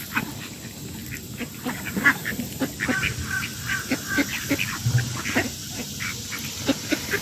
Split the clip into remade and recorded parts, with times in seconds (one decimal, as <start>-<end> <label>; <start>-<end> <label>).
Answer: 0.0-1.0 recorded; 1.0-2.5 remade; 2.5-3.0 recorded; 3.0-3.7 remade; 3.7-5.6 recorded; 5.6-6.4 remade; 6.4-7.2 recorded